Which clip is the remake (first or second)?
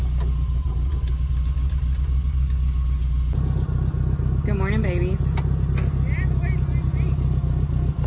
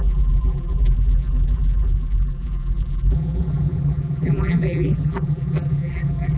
second